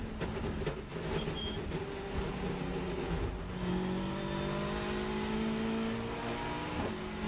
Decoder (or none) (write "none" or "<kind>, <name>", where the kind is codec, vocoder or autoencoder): none